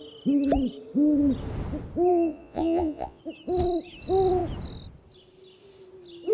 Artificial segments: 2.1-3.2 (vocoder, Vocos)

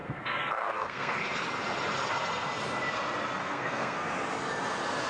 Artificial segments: 0.0-1.2 (codec, SNAC); 3.4-4.1

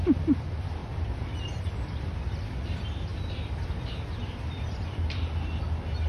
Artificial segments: 0.0-3.1 (vocoder, BigVGAN v2); 4.5-6.1

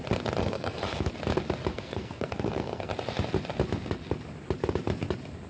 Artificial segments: 0.4-1.1 (codec, SNAC); 1.7-2.9

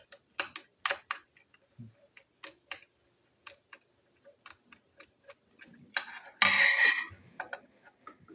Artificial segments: none

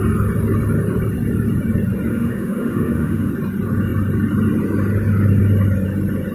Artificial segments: 2.1-3.3 (autoencoder, DAC-VAE)

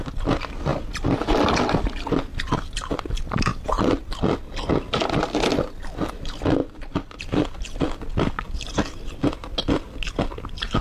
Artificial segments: 3.5-4.3 (vocoder, BigVGAN v2); 6.6-7.2